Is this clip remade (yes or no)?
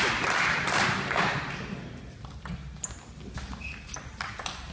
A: no